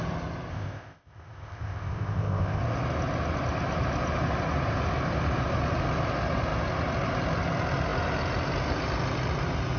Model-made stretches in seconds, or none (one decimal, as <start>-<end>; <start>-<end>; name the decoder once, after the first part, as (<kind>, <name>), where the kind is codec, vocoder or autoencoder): 0.5-2.6 (codec, ZipCodec)